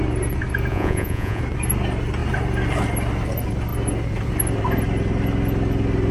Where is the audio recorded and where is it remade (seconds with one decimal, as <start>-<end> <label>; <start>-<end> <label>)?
0.0-0.7 recorded; 0.7-1.4 remade; 1.4-6.1 recorded